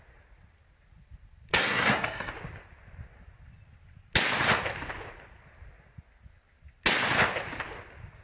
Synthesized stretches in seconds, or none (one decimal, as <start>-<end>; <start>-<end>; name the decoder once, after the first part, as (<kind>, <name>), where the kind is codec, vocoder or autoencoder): 1.5-2.3 (codec, SNAC)